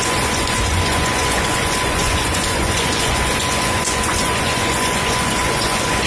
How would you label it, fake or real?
fake